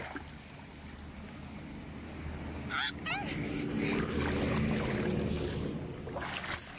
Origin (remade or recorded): recorded